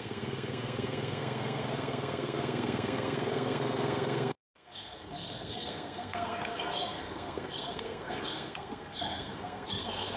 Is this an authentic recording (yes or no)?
no